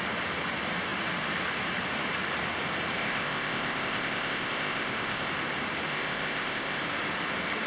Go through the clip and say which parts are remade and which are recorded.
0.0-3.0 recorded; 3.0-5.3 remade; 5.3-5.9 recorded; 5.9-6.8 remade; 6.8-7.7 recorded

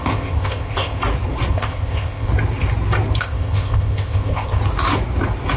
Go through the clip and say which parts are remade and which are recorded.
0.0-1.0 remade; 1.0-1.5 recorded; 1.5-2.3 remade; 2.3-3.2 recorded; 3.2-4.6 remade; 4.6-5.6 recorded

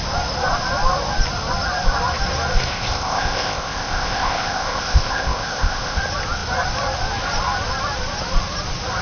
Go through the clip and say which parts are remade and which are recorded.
0.0-2.7 recorded; 2.7-6.0 remade; 6.0-9.0 recorded